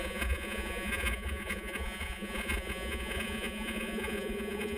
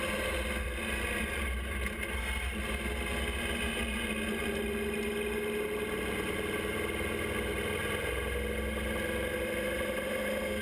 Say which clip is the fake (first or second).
first